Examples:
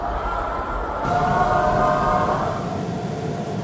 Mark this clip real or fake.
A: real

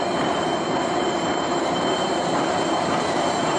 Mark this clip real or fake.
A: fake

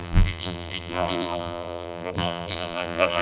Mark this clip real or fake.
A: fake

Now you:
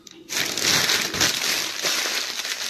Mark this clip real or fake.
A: real